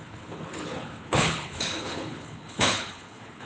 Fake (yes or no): yes